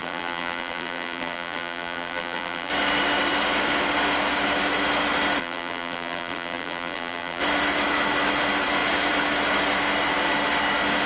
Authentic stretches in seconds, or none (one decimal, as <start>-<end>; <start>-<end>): 2.7-5.4; 7.4-11.1